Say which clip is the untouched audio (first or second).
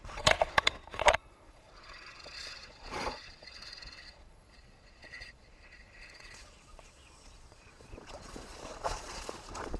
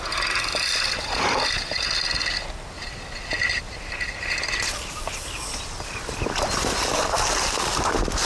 second